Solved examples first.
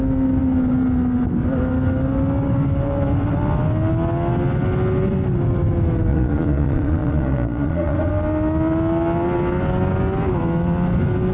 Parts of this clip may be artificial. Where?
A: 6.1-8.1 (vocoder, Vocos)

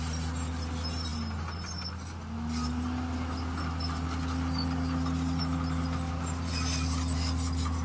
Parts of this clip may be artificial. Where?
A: none